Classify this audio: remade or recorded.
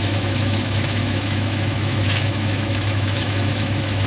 remade